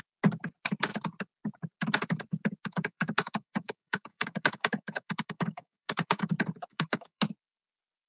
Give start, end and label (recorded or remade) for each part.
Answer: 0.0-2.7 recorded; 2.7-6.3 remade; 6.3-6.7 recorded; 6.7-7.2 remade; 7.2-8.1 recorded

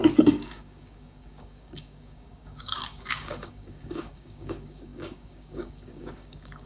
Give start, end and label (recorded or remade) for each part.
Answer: 0.0-6.7 remade

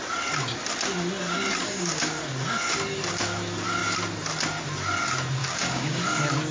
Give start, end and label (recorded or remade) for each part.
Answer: 0.0-1.6 recorded; 1.6-2.2 remade; 2.2-5.4 recorded; 5.4-6.0 remade; 6.0-6.5 recorded